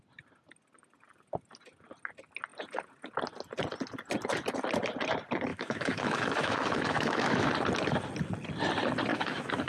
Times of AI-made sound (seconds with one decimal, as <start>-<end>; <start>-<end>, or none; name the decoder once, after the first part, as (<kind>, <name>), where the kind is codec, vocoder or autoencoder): 5.5-7.5 (autoencoder, DAC-VAE); 9.1-9.7